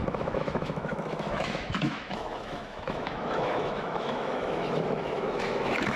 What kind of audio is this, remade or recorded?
remade